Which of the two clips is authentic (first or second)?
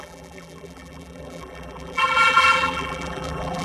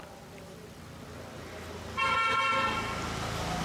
second